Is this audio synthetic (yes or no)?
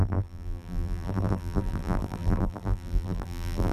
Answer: yes